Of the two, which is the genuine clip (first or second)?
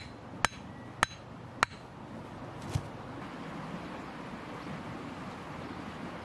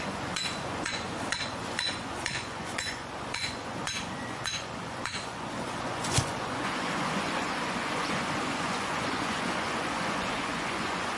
first